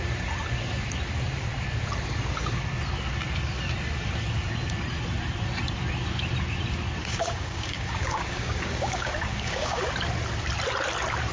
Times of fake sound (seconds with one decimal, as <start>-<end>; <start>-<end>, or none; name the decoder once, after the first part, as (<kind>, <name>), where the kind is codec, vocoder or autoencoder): 7.0-9.9 (codec, DAC)